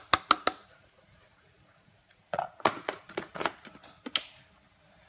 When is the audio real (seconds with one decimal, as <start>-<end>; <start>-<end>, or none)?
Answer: 0.0-0.6; 3.7-5.1